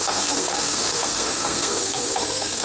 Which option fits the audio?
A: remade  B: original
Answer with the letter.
A